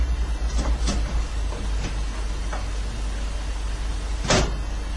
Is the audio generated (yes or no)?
no